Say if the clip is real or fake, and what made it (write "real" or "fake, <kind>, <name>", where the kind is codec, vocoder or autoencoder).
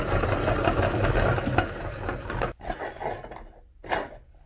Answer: real